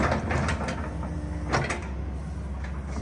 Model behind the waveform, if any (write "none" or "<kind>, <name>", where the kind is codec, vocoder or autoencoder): none